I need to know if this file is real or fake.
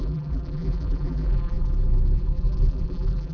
fake